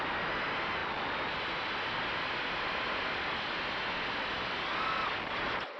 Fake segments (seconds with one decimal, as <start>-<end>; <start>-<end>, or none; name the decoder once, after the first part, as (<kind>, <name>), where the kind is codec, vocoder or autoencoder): none